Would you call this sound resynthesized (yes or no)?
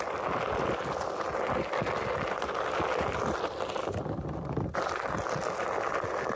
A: no